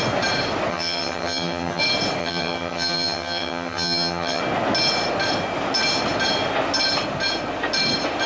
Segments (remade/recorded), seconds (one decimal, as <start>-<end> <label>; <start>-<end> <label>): 0.0-0.7 recorded; 0.7-1.8 remade; 1.8-2.2 recorded; 2.2-4.4 remade; 4.4-8.3 recorded